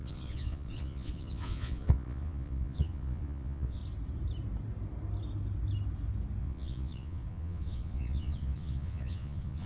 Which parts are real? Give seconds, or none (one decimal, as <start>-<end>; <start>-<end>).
3.8-6.4